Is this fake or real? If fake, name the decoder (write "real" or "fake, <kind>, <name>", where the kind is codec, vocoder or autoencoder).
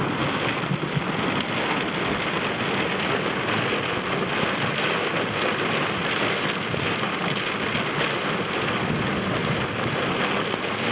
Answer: real